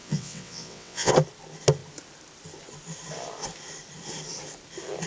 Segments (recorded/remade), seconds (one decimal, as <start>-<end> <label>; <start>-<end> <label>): 0.0-1.1 remade; 1.1-5.1 recorded